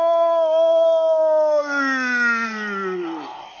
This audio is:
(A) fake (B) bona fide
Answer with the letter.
B